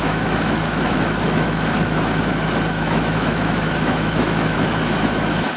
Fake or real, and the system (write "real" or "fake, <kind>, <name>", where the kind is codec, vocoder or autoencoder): fake, autoencoder, DAC-VAE